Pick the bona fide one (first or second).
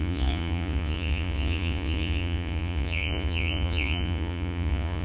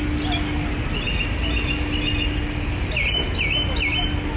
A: second